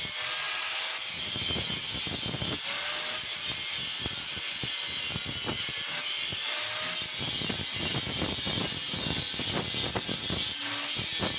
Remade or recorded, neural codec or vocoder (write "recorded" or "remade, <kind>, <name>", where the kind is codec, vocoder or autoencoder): recorded